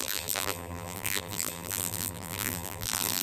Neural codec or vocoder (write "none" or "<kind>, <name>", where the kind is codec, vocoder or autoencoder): vocoder, BigVGAN v2